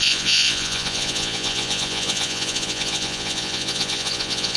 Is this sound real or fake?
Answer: fake